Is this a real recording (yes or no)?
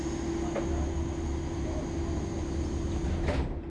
yes